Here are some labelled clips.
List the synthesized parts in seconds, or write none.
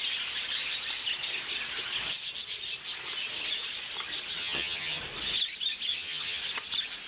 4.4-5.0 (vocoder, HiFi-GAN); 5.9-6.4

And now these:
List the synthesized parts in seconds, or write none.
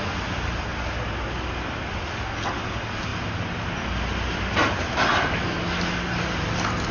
none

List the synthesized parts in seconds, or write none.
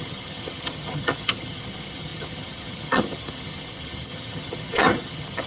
0.0-5.5 (vocoder, HiFi-GAN)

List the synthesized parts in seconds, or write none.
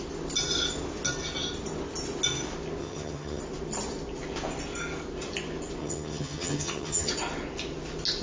2.8-3.4 (vocoder, HiFi-GAN); 5.8-7.1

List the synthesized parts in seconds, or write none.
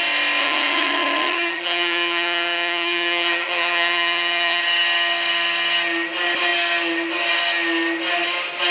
0.4-4.6 (vocoder, HiFi-GAN)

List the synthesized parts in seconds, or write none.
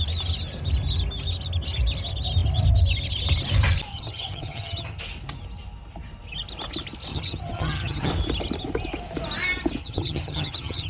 3.9-5.0 (vocoder, HiFi-GAN); 7.1-8.1; 9.8-10.9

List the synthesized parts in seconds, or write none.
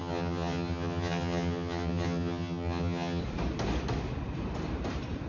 0.0-3.2 (vocoder, HiFi-GAN)